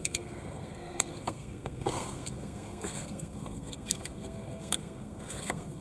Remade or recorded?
remade